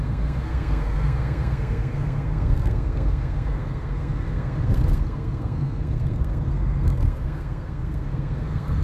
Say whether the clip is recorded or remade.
remade